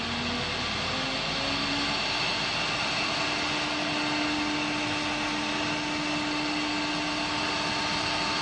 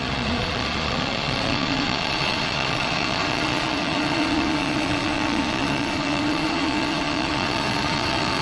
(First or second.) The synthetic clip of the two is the second